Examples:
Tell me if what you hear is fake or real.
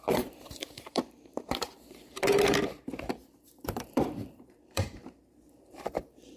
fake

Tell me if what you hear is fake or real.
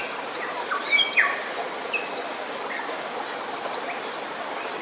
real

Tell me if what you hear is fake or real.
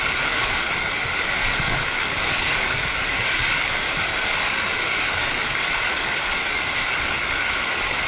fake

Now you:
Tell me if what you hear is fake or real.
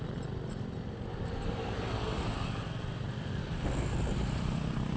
real